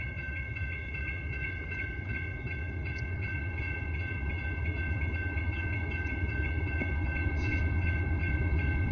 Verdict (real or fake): fake